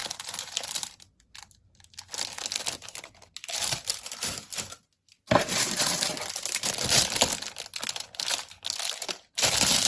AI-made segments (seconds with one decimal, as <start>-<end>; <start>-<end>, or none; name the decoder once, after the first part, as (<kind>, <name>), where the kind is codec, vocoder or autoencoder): none

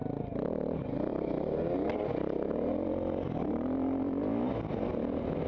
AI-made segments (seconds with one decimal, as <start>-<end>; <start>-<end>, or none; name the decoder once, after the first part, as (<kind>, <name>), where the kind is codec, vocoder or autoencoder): none

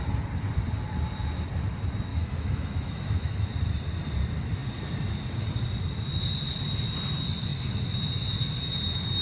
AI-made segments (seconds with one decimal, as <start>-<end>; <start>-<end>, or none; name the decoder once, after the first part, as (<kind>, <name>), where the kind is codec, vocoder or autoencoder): 2.1-3.5 (autoencoder, DAC-VAE)

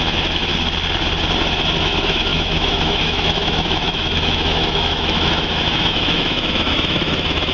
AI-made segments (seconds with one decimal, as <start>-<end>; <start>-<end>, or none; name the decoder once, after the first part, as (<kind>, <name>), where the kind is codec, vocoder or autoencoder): 0.0-0.5 (autoencoder, DAC-VAE); 1.8-7.5